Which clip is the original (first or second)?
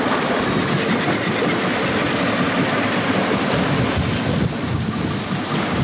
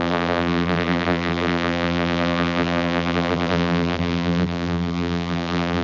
first